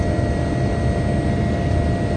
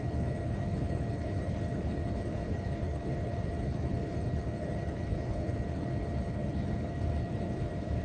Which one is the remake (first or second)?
second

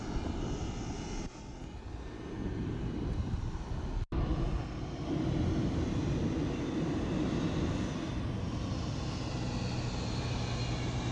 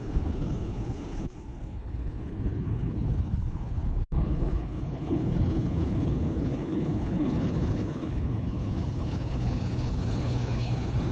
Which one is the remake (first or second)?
second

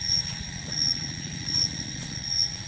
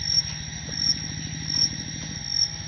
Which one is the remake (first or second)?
first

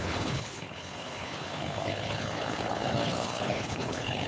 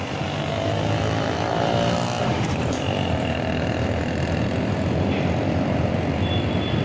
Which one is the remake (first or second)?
first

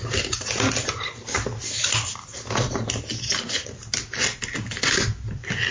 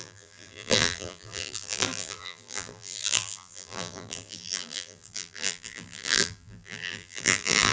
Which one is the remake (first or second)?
second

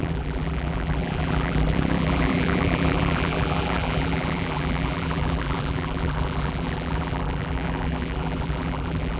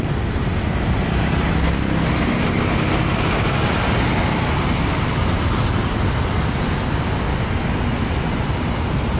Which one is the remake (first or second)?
first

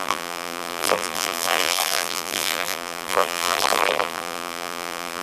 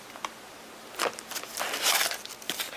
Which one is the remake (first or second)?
first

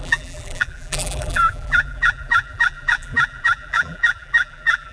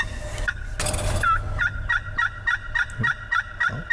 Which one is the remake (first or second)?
first